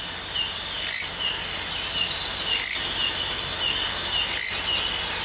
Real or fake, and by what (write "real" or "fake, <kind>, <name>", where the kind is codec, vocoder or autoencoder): real